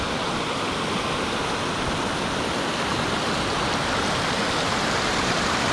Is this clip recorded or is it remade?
recorded